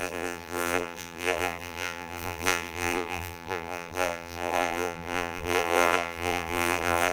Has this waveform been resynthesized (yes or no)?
yes